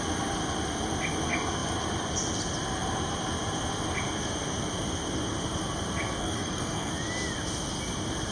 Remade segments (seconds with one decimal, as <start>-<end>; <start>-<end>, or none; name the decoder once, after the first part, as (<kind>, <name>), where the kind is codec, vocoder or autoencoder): 6.2-6.9 (codec, SNAC)